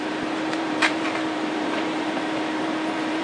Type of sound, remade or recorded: remade